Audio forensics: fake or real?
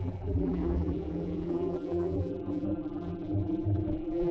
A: fake